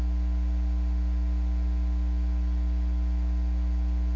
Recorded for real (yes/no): yes